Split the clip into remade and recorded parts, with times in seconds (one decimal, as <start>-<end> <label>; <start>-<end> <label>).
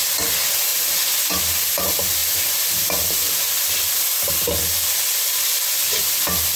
0.0-2.2 recorded; 2.2-4.4 remade; 4.4-6.6 recorded